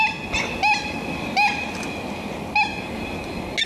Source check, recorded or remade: recorded